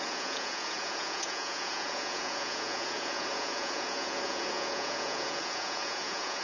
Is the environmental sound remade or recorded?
remade